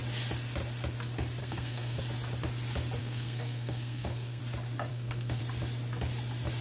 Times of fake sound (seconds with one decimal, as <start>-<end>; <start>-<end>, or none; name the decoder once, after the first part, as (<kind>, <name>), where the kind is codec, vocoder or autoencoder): 1.4-2.0 (codec, SNAC); 3.0-4.4; 4.9-5.4